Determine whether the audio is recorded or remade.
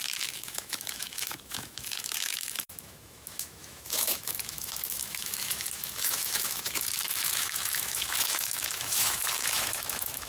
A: remade